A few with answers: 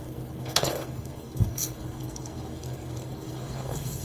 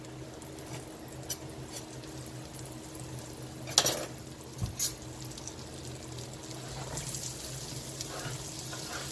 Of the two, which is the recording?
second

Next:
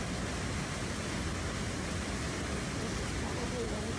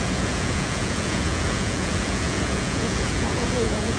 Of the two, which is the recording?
first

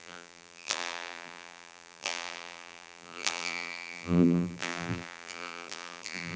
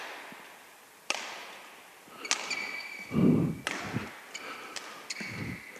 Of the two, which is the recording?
second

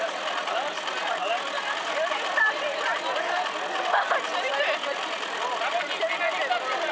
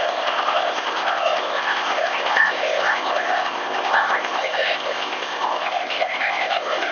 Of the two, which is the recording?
first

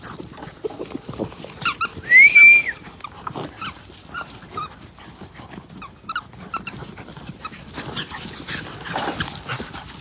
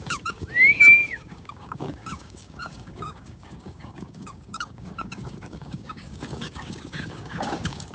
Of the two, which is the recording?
first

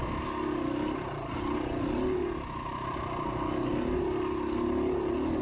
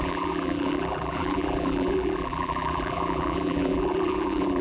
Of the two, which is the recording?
first